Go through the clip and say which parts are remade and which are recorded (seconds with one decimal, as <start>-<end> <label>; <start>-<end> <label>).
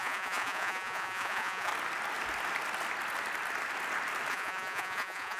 0.0-1.7 remade; 1.7-4.3 recorded; 4.3-5.4 remade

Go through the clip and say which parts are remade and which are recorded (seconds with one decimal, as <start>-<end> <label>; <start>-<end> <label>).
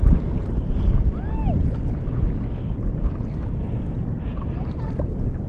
0.0-5.5 recorded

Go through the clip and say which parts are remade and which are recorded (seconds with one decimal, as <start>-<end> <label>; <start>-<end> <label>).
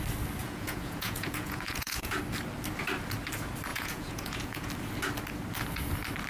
0.0-0.4 recorded; 0.4-2.2 remade; 2.2-3.7 recorded; 3.7-4.7 remade; 4.7-6.3 recorded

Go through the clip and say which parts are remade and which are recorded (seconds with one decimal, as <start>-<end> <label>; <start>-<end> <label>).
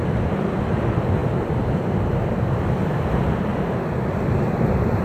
0.0-3.5 remade; 3.5-4.4 recorded; 4.4-5.0 remade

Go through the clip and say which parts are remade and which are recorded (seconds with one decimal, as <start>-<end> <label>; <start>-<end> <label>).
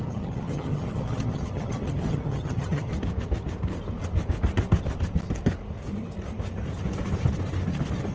0.0-2.9 remade; 2.9-8.1 recorded